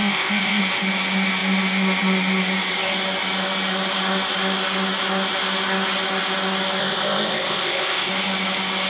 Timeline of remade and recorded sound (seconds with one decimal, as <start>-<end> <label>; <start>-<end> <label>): 0.0-0.6 remade; 0.6-6.8 recorded; 6.8-8.1 remade; 8.1-8.9 recorded